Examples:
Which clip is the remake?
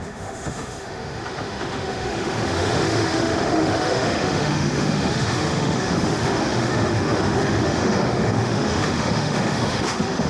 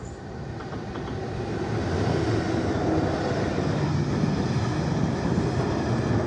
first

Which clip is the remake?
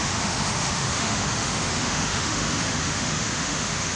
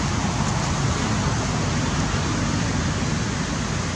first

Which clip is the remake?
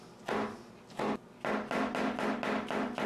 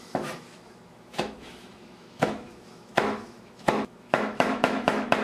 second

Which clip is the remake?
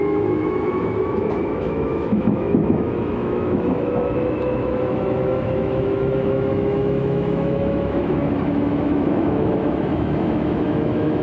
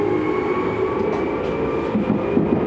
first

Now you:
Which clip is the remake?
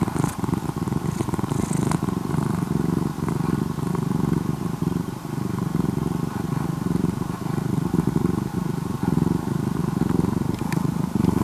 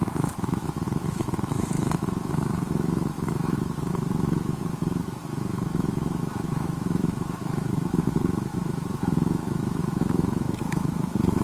second